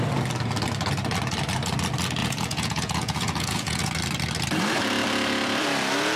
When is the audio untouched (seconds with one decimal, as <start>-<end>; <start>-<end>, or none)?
0.0-2.2; 3.9-6.2